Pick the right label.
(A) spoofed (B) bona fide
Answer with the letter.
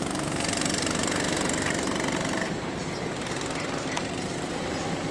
A